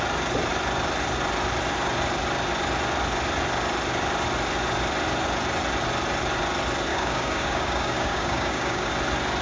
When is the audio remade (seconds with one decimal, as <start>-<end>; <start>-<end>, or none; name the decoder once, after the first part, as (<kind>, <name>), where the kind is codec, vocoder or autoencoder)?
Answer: 6.9-8.9 (codec, DAC)